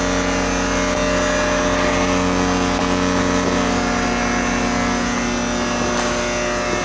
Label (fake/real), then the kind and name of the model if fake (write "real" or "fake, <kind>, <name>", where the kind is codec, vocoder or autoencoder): real